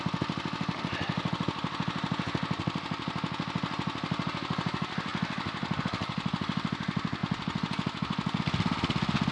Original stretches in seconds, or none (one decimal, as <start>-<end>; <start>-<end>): 0.0-9.3